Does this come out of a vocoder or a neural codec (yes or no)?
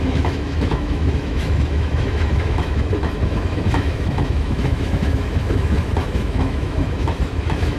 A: yes